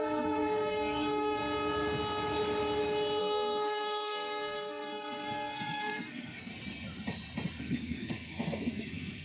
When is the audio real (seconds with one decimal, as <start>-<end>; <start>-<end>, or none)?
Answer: 1.4-3.2; 6.5-7.6